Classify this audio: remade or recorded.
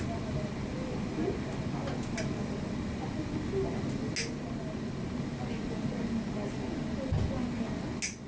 recorded